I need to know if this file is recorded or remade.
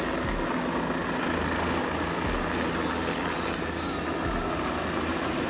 recorded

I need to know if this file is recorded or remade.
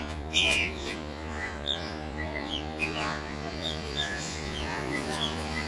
remade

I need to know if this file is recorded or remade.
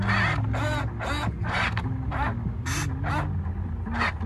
recorded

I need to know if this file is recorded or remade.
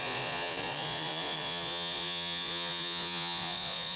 remade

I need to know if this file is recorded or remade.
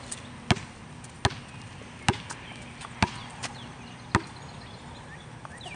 recorded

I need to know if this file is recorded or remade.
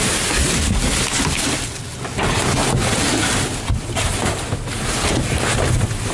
recorded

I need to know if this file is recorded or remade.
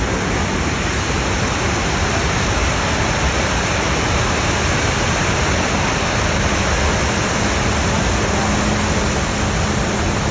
recorded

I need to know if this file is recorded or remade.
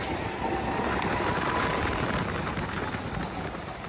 recorded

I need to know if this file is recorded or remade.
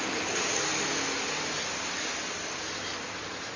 recorded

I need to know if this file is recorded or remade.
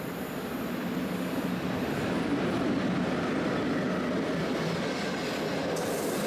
recorded